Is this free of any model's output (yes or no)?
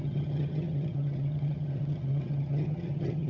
no